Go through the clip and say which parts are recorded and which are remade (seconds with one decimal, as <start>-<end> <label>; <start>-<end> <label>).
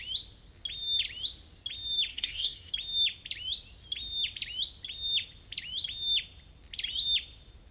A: 0.0-2.1 recorded; 2.1-2.7 remade; 2.7-7.7 recorded